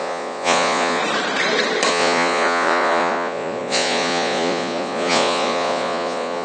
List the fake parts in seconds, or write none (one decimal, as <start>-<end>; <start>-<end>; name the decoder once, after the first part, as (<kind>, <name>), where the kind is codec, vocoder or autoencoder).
0.0-1.0 (vocoder, Vocos); 1.9-6.4